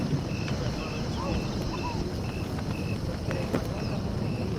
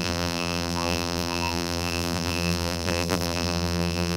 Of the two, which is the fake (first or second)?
second